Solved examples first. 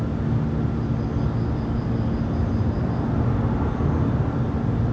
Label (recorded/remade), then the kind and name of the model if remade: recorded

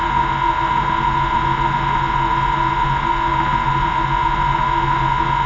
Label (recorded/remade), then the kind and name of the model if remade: recorded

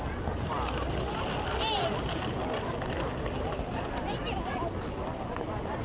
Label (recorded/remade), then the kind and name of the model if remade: recorded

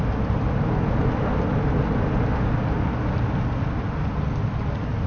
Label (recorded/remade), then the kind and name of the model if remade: recorded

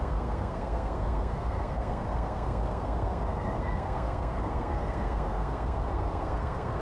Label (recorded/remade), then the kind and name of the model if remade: remade, codec, SNAC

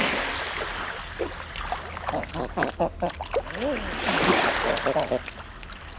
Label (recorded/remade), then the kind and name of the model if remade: recorded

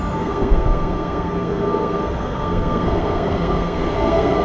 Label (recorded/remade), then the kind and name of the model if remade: remade, codec, SNAC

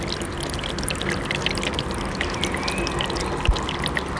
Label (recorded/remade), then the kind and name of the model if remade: recorded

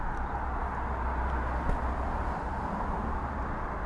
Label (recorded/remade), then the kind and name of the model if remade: recorded